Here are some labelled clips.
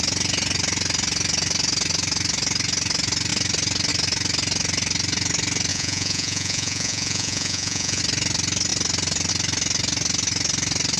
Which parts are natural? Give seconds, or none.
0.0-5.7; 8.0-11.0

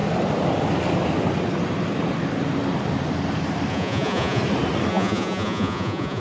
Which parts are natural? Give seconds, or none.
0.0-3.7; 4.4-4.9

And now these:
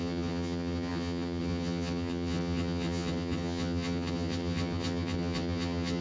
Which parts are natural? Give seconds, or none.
none